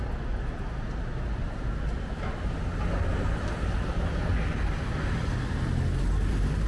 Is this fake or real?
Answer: real